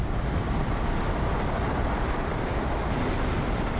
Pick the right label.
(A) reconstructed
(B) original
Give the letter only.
A